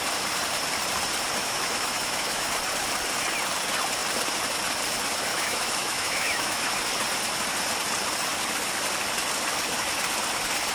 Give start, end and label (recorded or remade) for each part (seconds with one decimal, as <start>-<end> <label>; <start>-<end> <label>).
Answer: 0.0-1.4 recorded; 1.4-2.5 remade; 2.5-5.3 recorded; 5.3-6.7 remade; 6.7-10.7 recorded